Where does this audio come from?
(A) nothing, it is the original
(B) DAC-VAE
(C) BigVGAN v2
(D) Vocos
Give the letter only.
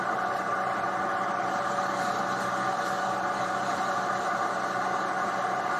A